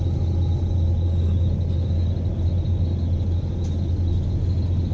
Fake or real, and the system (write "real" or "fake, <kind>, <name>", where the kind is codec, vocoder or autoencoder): real